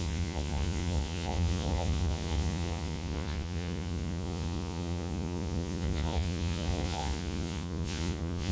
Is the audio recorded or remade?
remade